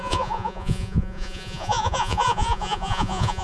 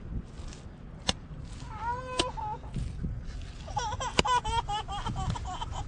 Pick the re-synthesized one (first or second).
first